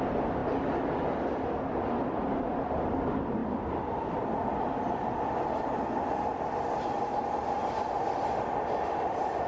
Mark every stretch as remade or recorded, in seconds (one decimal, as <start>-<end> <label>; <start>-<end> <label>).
0.0-9.5 recorded

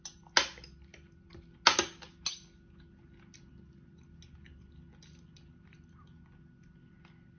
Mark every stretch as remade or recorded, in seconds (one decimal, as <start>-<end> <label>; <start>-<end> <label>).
0.0-7.4 recorded